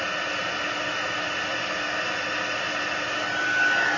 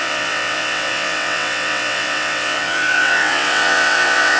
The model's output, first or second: second